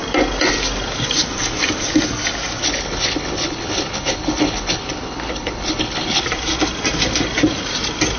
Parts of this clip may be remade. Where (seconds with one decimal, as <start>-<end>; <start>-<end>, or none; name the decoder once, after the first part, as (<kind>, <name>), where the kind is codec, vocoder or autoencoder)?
2.6-6.2 (codec, HILCodec)